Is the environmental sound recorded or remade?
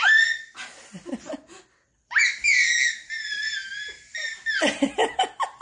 recorded